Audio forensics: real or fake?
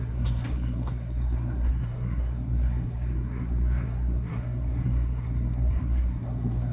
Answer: fake